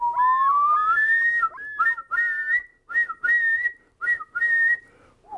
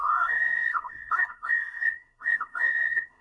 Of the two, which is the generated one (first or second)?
second